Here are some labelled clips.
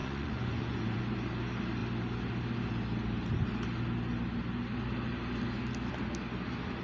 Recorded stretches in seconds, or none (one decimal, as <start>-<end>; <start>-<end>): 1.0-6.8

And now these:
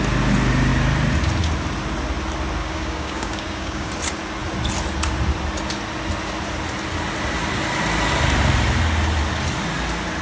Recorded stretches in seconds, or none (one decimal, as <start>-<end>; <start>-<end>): 0.0-2.6; 3.9-10.2

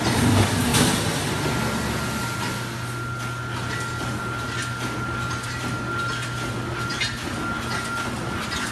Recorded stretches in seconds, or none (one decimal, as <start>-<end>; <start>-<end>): 0.0-8.7